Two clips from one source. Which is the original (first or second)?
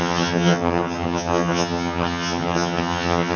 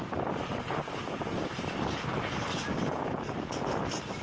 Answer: second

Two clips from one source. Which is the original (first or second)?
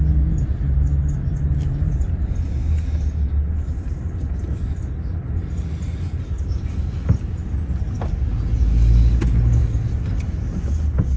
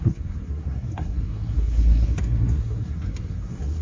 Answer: first